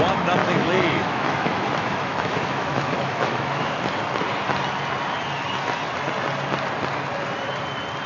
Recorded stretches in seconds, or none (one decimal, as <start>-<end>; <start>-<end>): 0.0-0.4; 3.8-8.1